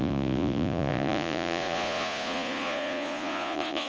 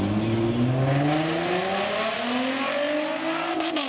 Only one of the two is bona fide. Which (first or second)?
second